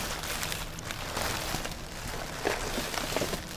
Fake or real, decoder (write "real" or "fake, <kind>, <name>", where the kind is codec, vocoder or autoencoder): real